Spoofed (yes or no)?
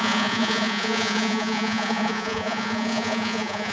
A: yes